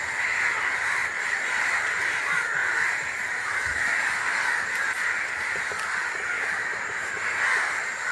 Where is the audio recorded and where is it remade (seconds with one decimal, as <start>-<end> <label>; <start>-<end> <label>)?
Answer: 0.0-1.0 recorded; 1.0-2.2 remade; 2.2-2.6 recorded; 2.6-3.8 remade; 3.8-6.6 recorded; 6.6-7.2 remade; 7.2-8.1 recorded